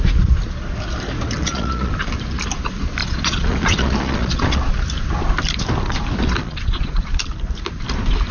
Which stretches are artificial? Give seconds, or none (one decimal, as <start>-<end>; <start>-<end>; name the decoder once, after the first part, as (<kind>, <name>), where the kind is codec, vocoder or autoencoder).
1.4-1.9 (vocoder, Vocos); 3.0-4.7; 6.4-7.1